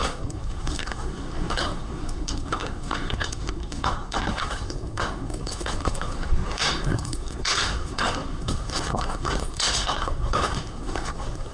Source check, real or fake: fake